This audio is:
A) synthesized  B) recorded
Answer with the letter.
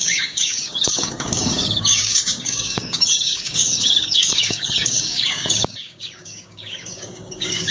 A